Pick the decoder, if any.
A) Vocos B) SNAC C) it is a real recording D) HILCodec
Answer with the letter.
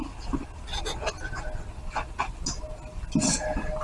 C